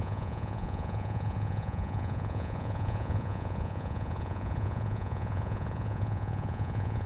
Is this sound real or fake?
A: fake